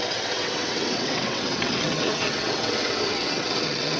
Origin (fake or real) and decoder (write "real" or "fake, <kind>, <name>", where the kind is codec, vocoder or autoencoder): fake, vocoder, WaveNeXt